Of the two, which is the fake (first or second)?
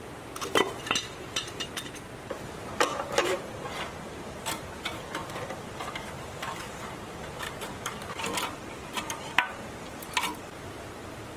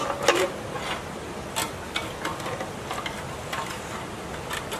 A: first